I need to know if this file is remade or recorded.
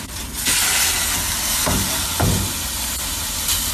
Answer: recorded